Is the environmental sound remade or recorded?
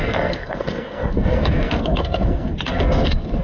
remade